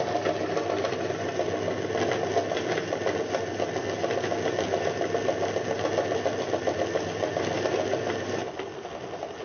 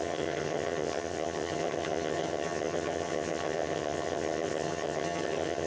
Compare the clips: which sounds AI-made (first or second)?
second